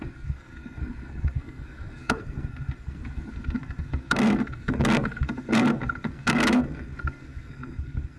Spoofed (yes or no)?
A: yes